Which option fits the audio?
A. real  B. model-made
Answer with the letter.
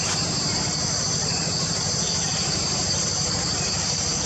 B